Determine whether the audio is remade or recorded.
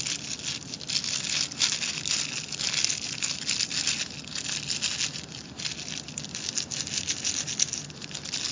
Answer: recorded